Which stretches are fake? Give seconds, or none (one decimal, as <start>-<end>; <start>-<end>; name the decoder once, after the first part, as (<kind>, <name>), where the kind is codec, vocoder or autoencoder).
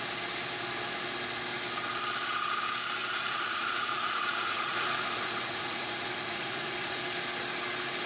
3.0-7.0 (vocoder, Vocos)